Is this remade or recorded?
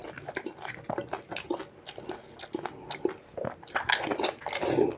recorded